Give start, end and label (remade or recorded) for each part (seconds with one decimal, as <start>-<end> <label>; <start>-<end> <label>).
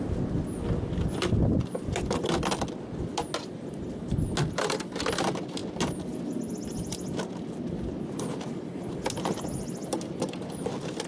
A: 0.0-11.1 recorded